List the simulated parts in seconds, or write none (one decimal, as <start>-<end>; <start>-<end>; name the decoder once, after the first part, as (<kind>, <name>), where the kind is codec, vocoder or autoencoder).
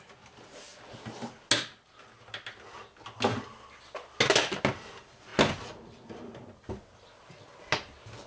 none